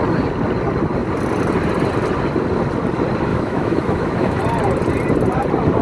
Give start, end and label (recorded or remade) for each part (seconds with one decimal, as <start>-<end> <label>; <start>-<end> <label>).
0.0-3.3 recorded; 3.3-4.4 remade; 4.4-5.8 recorded